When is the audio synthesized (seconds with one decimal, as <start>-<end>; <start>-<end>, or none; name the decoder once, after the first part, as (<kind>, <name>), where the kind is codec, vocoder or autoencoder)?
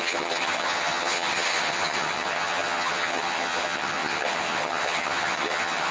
0.0-5.9 (vocoder, HiFi-GAN)